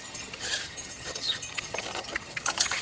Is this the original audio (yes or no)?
no